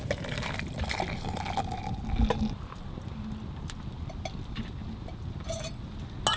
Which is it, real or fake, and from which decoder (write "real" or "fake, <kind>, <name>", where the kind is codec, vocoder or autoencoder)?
real